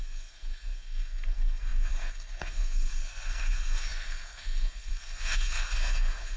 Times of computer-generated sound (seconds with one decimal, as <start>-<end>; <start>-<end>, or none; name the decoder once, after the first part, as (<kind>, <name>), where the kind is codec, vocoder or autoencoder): 0.0-6.4 (codec, SNAC)